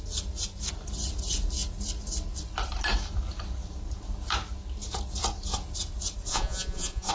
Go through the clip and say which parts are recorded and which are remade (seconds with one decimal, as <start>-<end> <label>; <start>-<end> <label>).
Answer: 0.0-6.3 recorded; 6.3-7.1 remade